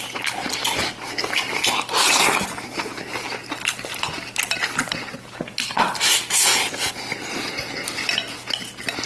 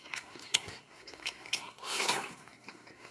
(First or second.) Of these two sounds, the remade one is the second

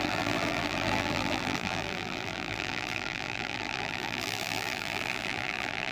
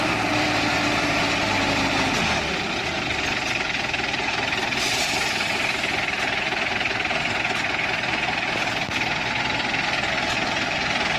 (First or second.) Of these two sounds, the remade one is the first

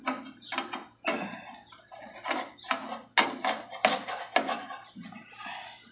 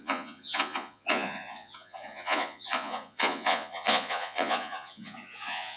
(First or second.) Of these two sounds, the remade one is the second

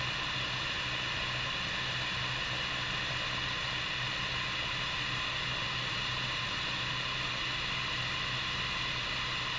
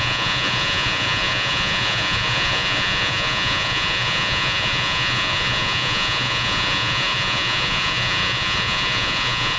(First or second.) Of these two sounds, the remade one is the second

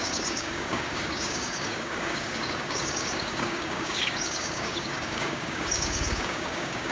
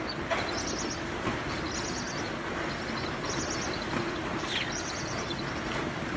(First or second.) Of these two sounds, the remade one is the first